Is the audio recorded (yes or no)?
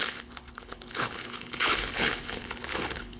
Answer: no